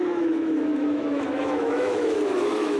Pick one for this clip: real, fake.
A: fake